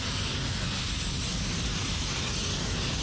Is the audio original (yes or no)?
yes